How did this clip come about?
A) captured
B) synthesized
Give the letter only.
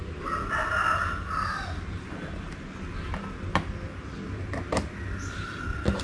A